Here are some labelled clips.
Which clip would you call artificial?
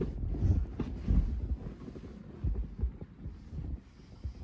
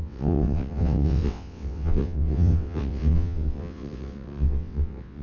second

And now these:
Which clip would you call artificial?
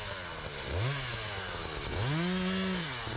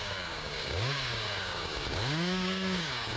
second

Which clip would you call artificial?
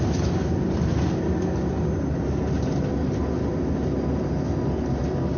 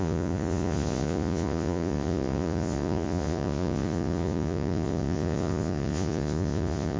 second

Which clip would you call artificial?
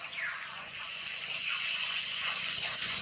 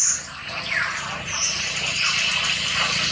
first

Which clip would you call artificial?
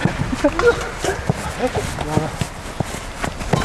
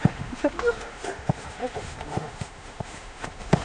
second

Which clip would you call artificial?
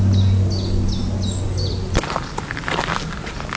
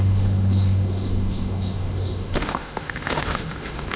second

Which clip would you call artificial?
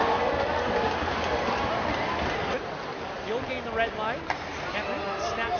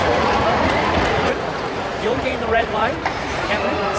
second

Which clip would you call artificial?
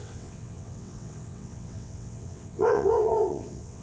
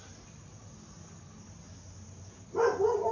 first